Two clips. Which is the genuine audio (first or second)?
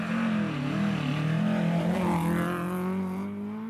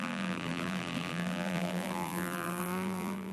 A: first